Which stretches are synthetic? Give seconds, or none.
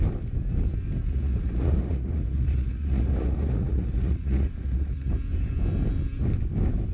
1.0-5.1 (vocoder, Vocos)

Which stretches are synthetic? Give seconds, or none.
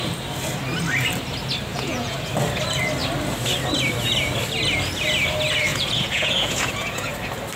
1.7-2.3 (vocoder, Vocos); 5.7-7.1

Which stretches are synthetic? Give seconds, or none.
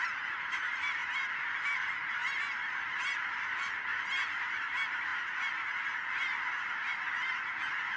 0.0-1.0 (vocoder, BigVGAN v2); 1.6-5.1